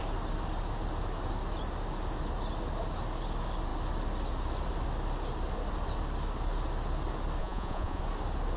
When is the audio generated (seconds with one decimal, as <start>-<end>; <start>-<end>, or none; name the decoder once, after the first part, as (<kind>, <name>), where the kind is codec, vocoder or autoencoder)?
7.4-8.0 (vocoder, Vocos)